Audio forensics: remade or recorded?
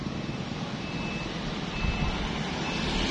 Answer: recorded